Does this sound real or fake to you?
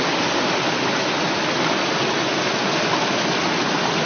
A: real